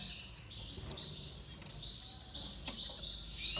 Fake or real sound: real